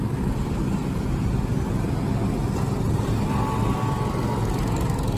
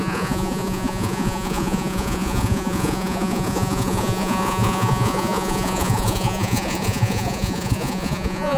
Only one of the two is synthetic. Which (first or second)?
second